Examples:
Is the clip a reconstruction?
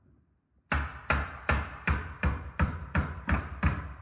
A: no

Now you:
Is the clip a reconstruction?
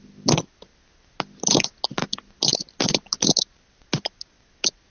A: no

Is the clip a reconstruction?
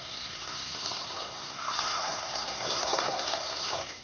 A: yes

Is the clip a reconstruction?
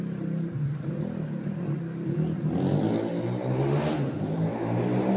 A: no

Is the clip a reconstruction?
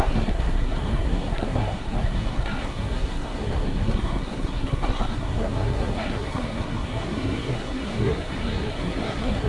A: yes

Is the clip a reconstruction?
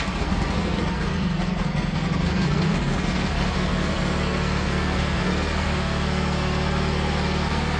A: yes